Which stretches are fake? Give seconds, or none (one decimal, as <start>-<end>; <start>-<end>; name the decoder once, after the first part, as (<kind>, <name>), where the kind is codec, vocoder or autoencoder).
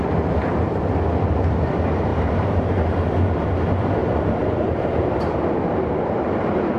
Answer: 2.1-3.0 (vocoder, BigVGAN v2); 4.0-6.3